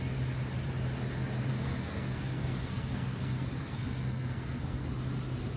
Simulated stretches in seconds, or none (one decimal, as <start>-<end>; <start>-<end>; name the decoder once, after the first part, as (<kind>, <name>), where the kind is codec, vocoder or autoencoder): 1.5-4.9 (codec, SNAC)